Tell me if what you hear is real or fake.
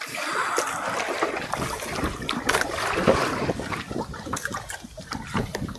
fake